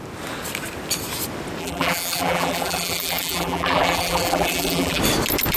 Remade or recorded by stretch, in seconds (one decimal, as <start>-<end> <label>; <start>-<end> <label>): 0.0-1.6 recorded; 1.6-5.0 remade; 5.0-5.6 recorded